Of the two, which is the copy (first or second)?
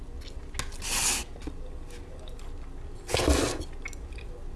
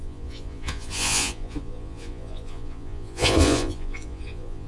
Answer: second